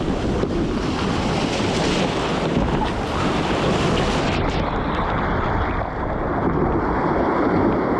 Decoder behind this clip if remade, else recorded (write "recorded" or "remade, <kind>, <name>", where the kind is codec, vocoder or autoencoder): recorded